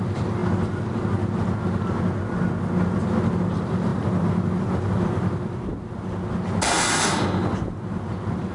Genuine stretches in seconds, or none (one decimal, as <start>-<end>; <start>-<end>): 0.4-3.5; 5.7-7.4